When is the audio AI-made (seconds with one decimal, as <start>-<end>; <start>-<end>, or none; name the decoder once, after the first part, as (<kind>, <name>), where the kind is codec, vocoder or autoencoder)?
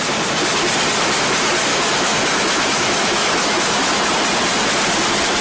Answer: 1.7-4.1 (autoencoder, DAC-VAE)